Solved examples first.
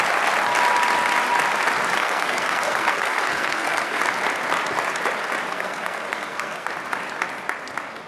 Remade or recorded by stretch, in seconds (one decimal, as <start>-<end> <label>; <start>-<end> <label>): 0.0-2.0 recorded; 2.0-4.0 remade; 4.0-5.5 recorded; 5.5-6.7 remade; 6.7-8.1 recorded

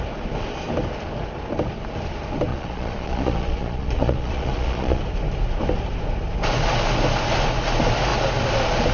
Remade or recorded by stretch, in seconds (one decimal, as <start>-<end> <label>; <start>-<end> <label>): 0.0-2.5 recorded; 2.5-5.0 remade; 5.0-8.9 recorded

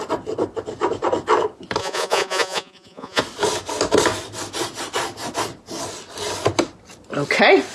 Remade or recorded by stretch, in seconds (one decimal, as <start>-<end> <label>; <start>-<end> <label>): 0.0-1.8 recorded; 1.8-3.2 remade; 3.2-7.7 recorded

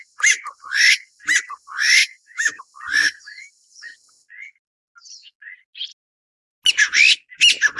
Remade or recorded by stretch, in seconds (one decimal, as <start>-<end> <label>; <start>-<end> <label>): 0.0-2.0 recorded; 2.0-2.6 remade; 2.6-3.0 recorded; 3.0-3.5 remade; 3.5-7.8 recorded

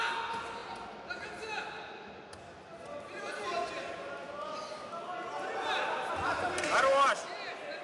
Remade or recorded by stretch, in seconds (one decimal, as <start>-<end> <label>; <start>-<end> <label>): 0.0-7.8 recorded

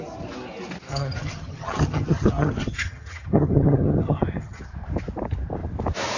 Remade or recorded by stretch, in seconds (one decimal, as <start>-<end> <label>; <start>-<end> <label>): 0.0-0.9 recorded; 0.9-4.6 remade; 4.6-6.2 recorded

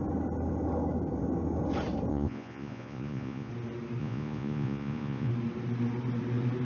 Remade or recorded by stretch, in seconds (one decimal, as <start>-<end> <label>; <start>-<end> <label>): 0.0-2.1 recorded; 2.1-3.5 remade; 3.5-4.0 recorded; 4.0-5.3 remade; 5.3-6.6 recorded

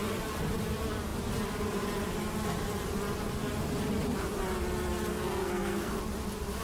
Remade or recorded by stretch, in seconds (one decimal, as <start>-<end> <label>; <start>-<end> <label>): 0.0-5.1 recorded; 5.1-6.0 remade; 6.0-6.6 recorded